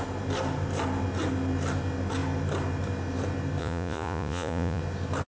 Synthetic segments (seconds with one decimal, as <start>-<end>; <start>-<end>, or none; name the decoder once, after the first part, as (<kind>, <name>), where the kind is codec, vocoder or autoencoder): 3.6-4.8 (vocoder, Vocos)